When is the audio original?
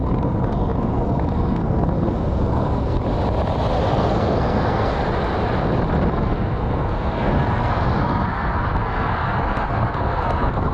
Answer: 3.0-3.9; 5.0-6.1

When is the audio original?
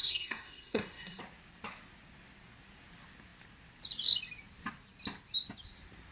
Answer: 1.2-6.1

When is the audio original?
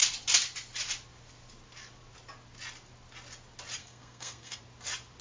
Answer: 0.0-3.8; 4.6-5.2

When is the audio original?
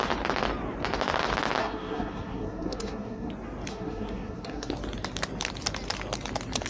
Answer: 0.0-1.6; 3.3-3.7; 4.7-6.7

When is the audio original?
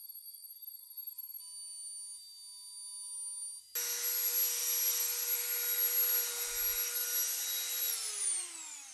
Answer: 1.4-8.9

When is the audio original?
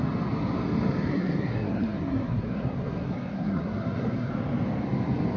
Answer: 0.0-1.1; 4.3-5.4